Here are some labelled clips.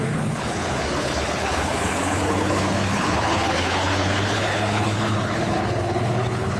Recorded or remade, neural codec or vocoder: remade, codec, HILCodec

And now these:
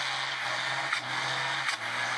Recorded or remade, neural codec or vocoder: recorded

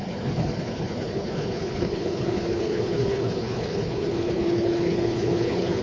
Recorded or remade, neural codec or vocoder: remade, codec, HILCodec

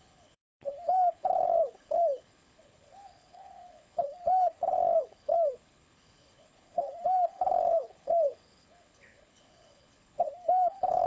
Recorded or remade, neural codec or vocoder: remade, codec, HILCodec